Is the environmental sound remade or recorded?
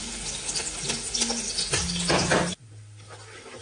recorded